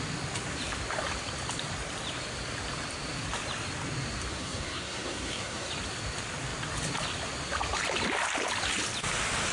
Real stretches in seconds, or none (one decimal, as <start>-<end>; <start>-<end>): 0.0-4.3; 5.7-9.5